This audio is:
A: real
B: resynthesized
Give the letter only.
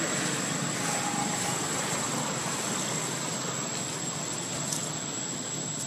A